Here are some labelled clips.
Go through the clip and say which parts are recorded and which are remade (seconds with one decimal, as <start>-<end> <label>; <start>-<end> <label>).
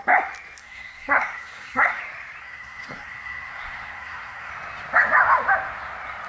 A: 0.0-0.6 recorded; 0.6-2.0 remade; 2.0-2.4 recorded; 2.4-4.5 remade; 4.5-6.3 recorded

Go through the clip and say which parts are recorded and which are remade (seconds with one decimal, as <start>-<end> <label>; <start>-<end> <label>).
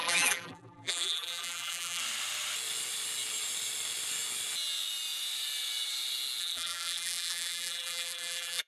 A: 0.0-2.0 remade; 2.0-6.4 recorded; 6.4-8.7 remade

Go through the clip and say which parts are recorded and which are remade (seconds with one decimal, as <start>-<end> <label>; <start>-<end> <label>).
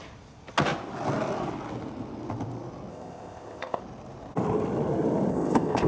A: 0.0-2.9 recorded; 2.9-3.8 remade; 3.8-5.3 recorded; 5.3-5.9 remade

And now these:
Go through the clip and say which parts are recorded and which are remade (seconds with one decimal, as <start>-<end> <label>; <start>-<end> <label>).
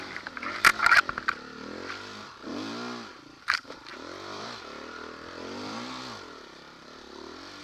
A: 0.0-0.7 remade; 0.7-3.4 recorded; 3.4-3.9 remade; 3.9-7.6 recorded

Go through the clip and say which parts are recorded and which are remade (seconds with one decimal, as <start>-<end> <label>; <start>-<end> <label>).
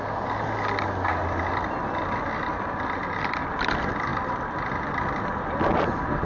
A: 0.0-1.2 recorded; 1.2-1.8 remade; 1.8-4.1 recorded; 4.1-4.7 remade; 4.7-6.2 recorded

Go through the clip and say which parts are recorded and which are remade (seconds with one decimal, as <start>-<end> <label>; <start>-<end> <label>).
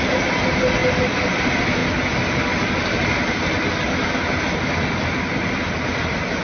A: 0.0-6.4 recorded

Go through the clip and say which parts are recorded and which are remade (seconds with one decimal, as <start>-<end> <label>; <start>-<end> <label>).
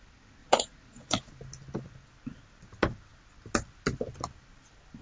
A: 0.0-0.4 recorded; 0.4-1.3 remade; 1.3-5.0 recorded